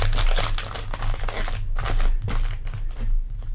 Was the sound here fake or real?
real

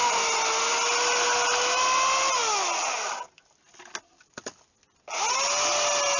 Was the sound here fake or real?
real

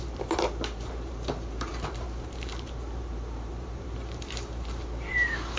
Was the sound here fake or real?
fake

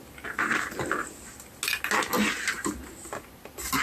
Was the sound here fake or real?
real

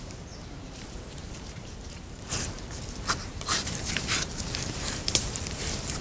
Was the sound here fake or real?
fake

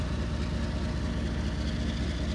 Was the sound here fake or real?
real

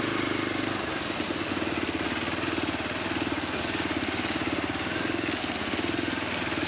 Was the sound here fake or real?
real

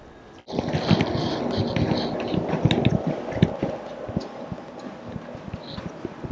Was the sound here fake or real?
real